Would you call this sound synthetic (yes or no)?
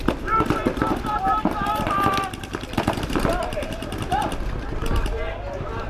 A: yes